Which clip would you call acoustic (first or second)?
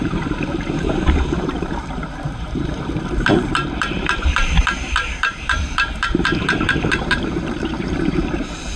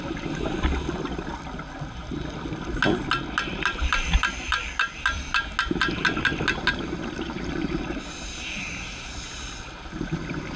second